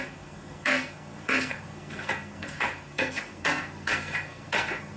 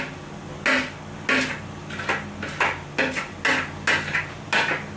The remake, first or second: first